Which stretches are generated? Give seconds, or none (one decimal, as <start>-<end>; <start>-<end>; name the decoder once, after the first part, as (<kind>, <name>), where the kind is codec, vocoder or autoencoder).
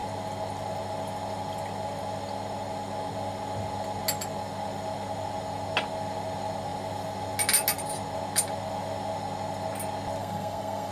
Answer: 10.2-10.9 (codec, SNAC)